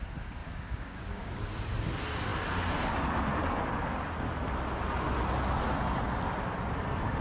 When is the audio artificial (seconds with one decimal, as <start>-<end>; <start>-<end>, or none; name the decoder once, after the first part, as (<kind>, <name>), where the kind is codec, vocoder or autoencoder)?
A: 0.4-1.5 (codec, DAC)